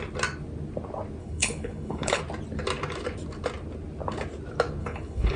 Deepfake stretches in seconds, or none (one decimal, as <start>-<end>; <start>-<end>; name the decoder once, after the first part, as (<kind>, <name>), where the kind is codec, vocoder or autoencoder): 1.2-2.2 (codec, HILCodec); 4.8-5.4